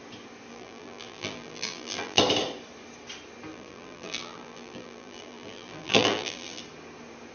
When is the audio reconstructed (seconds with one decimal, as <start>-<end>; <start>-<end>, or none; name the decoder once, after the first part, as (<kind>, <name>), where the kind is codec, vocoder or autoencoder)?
0.5-2.2 (vocoder, BigVGAN v2); 3.5-6.6